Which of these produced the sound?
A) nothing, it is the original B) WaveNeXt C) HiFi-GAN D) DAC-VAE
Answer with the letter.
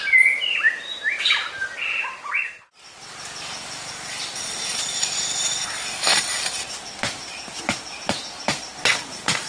A